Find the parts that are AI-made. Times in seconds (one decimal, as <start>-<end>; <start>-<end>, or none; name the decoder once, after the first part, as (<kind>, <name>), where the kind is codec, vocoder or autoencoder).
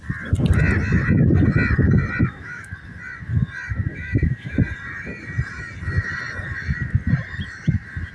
2.2-2.7 (autoencoder, DAC-VAE); 3.9-4.6